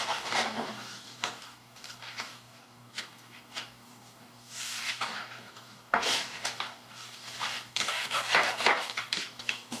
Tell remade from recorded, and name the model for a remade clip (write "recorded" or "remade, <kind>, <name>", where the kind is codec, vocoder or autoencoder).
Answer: remade, codec, DAC